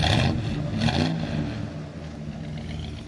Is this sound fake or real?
real